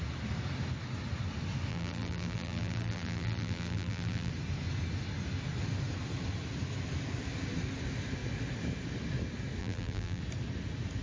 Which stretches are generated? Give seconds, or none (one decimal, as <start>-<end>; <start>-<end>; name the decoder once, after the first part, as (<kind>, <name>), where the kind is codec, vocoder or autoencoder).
1.7-4.3 (vocoder, BigVGAN v2); 9.6-10.2